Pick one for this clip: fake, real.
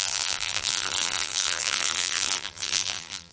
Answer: fake